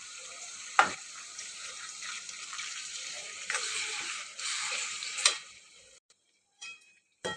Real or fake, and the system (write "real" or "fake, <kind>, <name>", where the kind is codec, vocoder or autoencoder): fake, vocoder, BigVGAN v2